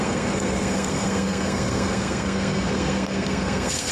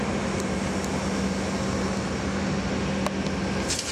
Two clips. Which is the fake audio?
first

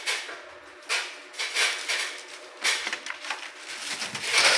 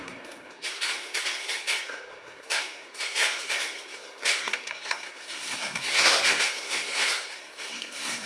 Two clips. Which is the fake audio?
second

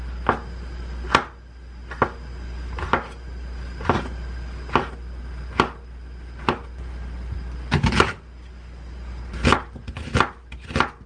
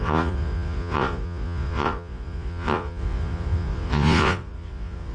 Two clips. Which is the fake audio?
second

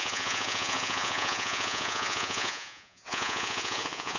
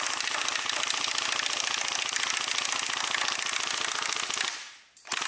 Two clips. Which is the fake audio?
first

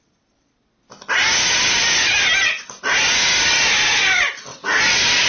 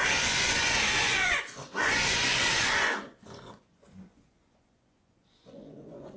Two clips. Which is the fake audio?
second